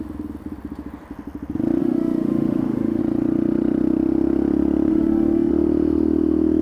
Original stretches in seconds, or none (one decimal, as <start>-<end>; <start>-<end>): 0.0-1.8; 3.0-4.9; 5.5-6.6

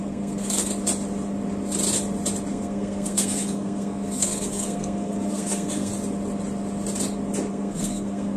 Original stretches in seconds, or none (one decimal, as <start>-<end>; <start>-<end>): 0.7-2.5; 5.9-7.5